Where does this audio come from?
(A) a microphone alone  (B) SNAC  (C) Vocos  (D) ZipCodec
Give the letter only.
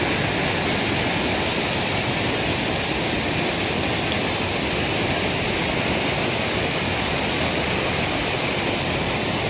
A